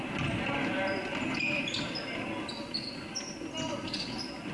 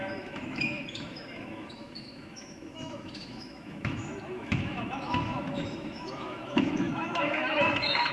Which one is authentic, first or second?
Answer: first